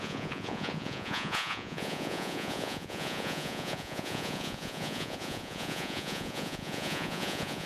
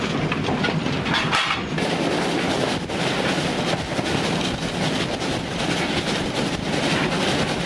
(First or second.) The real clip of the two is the second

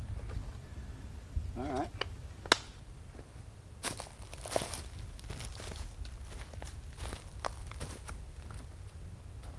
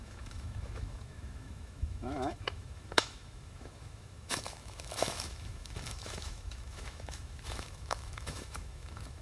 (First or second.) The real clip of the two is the first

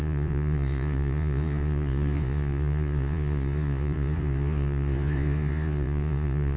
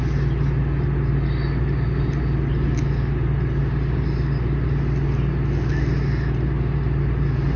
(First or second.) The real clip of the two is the second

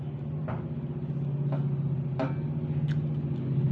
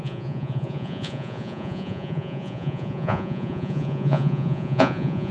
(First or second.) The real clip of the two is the first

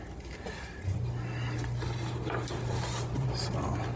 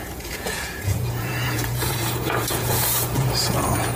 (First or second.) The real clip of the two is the first